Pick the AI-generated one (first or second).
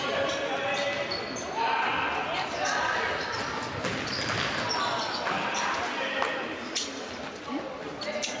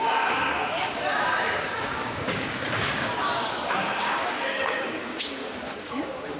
second